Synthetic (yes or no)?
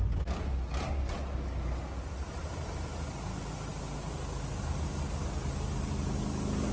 no